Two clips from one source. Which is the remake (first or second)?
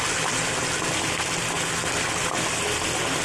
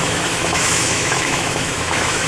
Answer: second